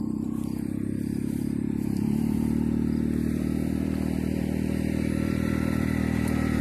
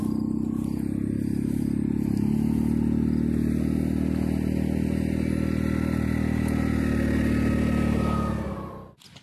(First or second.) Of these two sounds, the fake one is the first